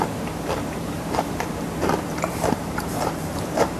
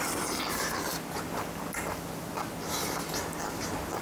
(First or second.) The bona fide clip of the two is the second